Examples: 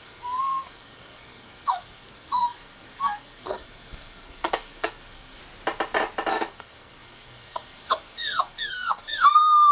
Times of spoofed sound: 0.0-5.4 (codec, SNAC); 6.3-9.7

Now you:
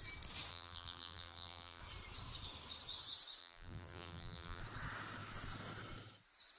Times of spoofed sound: 0.5-1.8 (vocoder, BigVGAN v2); 3.4-4.6

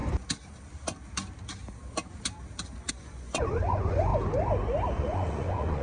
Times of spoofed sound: 2.9-4.1 (vocoder, Vocos); 4.9-5.8